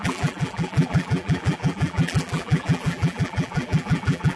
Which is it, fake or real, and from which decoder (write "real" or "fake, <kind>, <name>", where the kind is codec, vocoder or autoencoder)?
fake, vocoder, BigVGAN v2